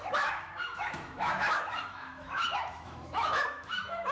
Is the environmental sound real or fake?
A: fake